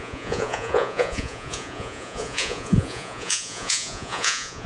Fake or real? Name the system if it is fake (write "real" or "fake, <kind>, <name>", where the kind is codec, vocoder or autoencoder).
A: fake, vocoder, Vocos